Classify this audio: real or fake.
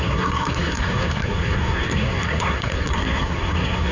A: fake